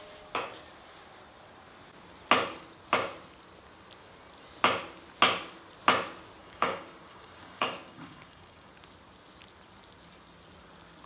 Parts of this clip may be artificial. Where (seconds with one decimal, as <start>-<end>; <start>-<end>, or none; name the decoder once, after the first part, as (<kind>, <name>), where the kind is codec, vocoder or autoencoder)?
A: 6.4-8.7 (codec, DAC)